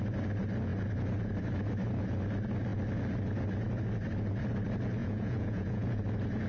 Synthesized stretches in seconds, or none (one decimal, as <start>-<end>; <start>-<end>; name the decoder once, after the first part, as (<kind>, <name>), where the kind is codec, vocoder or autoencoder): 5.0-6.0 (vocoder, Vocos)